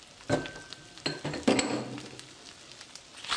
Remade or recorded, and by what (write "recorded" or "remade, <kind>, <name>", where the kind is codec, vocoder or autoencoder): recorded